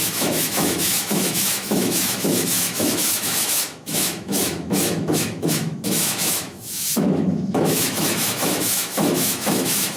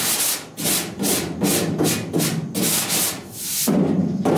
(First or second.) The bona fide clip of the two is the second